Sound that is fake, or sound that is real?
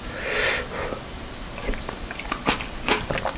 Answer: real